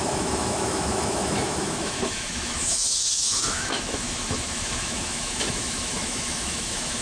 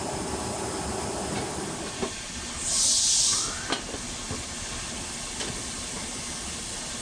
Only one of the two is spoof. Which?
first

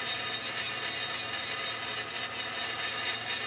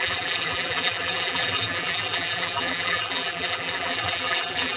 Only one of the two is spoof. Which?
second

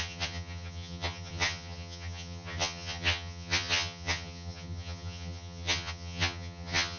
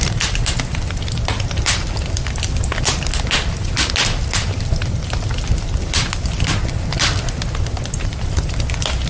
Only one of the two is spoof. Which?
first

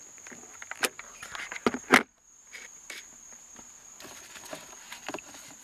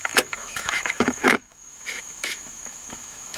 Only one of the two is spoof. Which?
second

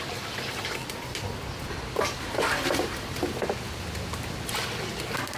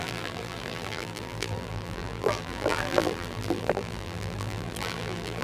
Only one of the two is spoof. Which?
second